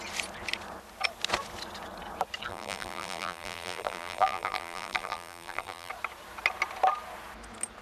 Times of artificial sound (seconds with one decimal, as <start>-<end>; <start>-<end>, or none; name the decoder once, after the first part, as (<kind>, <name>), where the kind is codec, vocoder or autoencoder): 2.5-5.9 (vocoder, BigVGAN v2)